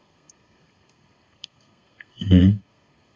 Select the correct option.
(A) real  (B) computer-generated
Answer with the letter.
B